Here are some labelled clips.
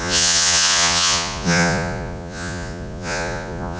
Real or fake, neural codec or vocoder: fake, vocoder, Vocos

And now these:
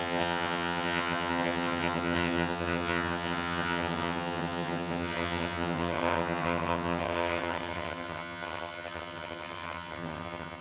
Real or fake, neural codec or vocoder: fake, vocoder, HiFi-GAN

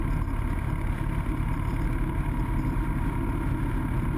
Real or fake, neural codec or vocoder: real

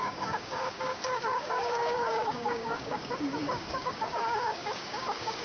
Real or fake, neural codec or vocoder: fake, codec, DAC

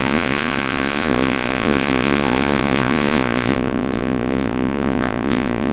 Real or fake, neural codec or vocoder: fake, vocoder, Vocos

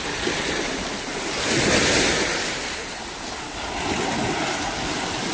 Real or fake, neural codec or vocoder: real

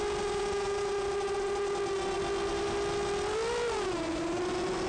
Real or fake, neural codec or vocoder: real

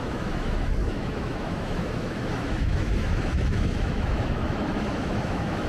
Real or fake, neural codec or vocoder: fake, autoencoder, DAC-VAE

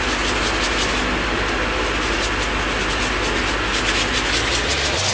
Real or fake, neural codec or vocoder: real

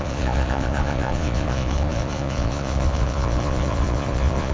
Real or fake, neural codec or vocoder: fake, vocoder, Vocos